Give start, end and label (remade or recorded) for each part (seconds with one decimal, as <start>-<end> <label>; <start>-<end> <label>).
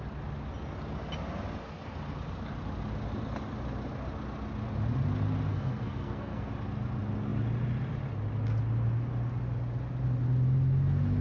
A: 0.0-5.5 recorded; 5.5-6.5 remade; 6.5-11.2 recorded